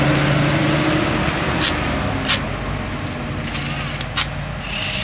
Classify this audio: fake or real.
real